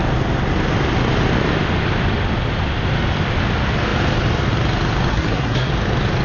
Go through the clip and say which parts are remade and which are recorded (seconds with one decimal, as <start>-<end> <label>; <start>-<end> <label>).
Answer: 0.0-5.1 recorded; 5.1-5.7 remade; 5.7-6.2 recorded